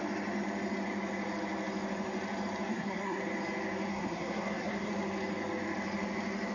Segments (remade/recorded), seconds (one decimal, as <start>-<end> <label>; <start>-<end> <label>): 0.0-2.7 recorded; 2.7-3.2 remade; 3.2-3.9 recorded; 3.9-4.9 remade; 4.9-6.5 recorded